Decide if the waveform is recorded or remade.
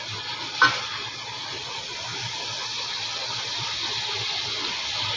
recorded